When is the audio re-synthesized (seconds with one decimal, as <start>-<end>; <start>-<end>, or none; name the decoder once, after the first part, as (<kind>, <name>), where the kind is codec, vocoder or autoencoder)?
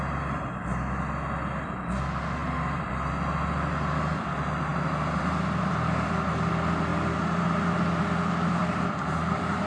4.7-6.5 (vocoder, BigVGAN v2); 6.9-8.0; 8.6-9.7